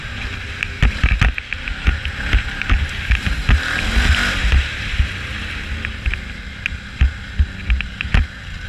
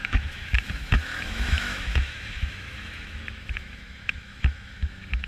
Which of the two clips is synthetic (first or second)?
second